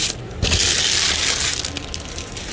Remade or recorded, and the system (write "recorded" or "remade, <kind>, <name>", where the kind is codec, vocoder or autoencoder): recorded